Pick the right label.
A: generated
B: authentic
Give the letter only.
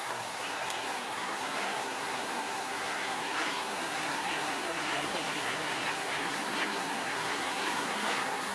A